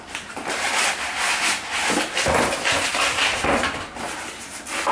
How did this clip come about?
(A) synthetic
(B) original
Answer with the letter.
B